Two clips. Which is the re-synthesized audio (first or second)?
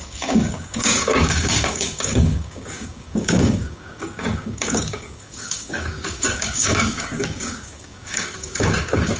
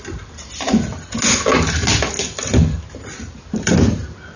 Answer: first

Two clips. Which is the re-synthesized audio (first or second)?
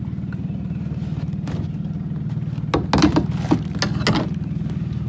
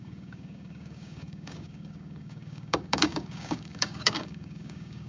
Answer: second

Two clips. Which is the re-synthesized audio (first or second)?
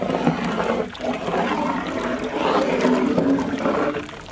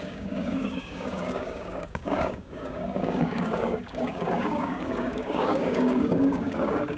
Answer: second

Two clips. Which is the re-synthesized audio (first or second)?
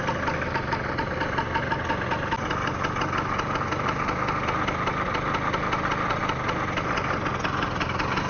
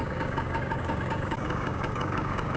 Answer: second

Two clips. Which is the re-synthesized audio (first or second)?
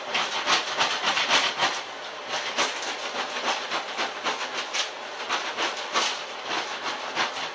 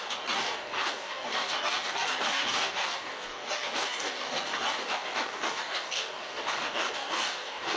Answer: second